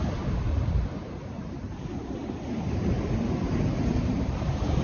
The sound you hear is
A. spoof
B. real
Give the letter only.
A